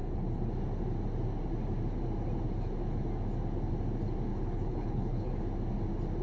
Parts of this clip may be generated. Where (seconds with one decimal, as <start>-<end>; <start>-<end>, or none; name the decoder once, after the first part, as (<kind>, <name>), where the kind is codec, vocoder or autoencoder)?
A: 4.3-5.3 (codec, HILCodec)